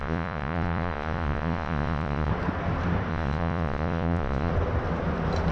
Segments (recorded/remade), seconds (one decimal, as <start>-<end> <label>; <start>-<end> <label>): 0.0-2.3 remade; 2.3-3.1 recorded; 3.1-4.5 remade; 4.5-5.5 recorded